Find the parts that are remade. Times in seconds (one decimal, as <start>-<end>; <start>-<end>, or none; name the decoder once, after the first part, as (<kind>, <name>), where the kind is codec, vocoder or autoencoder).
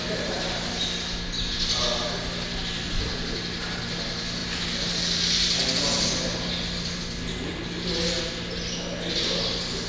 none